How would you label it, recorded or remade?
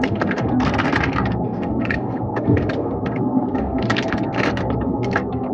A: remade